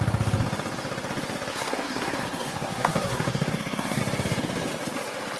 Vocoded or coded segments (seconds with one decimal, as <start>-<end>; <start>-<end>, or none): 1.5-4.0